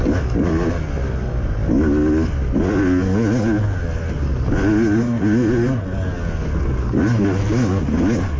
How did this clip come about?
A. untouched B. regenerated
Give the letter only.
A